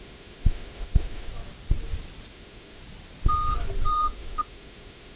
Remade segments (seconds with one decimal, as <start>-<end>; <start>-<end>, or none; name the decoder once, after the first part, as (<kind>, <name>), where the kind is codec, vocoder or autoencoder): 0.0-1.3 (autoencoder, DAC-VAE); 2.3-2.8; 3.9-5.2